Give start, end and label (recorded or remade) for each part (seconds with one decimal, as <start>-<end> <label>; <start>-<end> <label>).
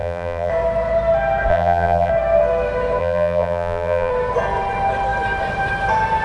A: 0.0-0.5 remade; 0.5-1.5 recorded; 1.5-2.1 remade; 2.1-3.0 recorded; 3.0-4.1 remade; 4.1-6.2 recorded